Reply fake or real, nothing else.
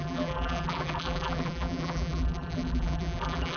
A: fake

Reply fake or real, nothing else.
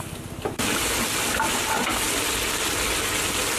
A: real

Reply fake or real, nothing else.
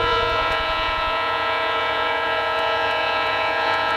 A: fake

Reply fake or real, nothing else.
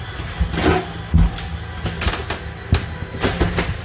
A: real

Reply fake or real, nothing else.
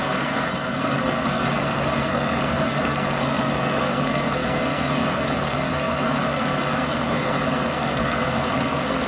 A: fake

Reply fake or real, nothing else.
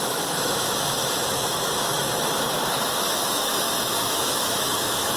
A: fake